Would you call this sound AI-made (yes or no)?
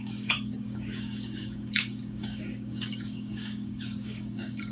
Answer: yes